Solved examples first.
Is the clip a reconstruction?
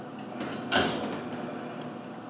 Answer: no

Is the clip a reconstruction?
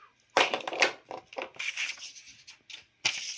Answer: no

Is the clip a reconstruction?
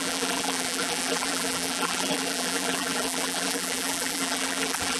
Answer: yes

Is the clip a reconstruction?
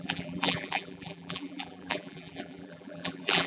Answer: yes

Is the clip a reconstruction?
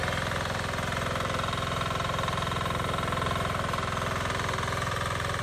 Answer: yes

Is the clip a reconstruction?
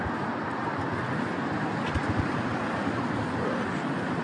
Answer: no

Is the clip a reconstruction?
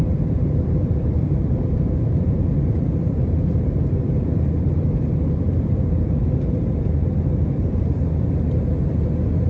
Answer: yes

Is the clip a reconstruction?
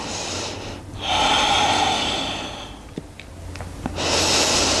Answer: no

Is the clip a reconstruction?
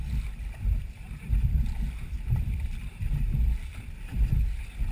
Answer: yes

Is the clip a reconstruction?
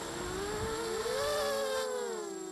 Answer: no